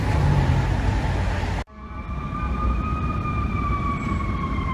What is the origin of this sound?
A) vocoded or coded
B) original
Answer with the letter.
A